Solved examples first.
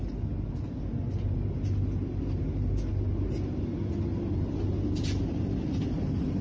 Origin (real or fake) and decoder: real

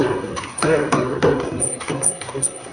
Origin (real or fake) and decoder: fake, codec, SNAC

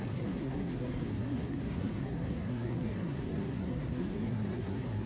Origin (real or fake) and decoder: fake, codec, SNAC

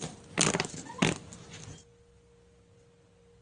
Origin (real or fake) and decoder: real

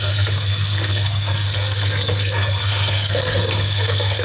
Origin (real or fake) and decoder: fake, codec, SNAC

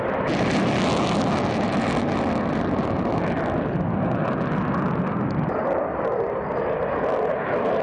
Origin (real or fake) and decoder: real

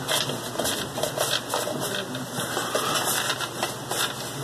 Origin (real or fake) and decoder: real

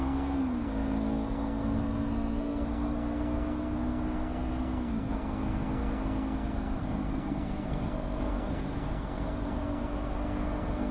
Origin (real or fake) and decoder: fake, codec, SNAC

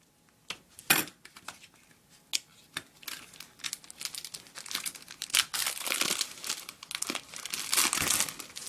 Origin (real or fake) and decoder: real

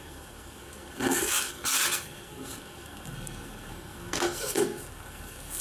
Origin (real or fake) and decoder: fake, codec, SNAC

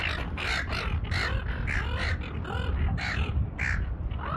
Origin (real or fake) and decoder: real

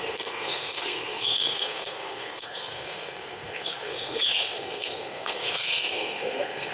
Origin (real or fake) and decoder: fake, codec, SNAC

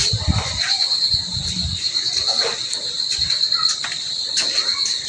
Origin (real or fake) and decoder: real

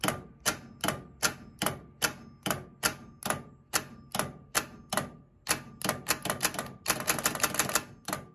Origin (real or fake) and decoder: real